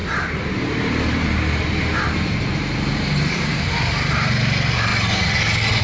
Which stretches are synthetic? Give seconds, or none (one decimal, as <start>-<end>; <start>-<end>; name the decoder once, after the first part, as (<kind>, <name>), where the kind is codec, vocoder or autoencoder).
0.0-4.9 (vocoder, BigVGAN v2)